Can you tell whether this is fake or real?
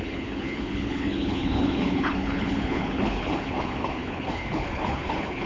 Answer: fake